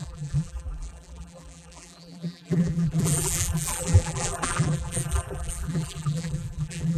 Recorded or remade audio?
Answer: remade